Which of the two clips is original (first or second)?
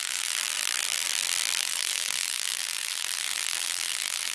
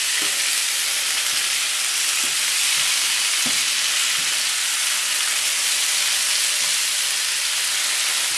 second